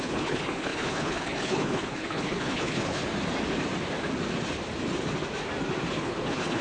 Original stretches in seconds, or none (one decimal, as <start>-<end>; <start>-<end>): 3.0-5.9